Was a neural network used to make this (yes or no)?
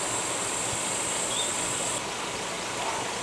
no